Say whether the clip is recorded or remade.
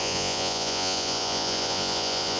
remade